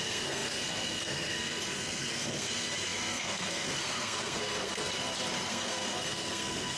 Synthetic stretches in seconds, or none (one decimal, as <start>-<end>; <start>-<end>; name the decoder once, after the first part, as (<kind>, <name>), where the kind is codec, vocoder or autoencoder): 0.0-4.9 (codec, SNAC); 5.5-6.8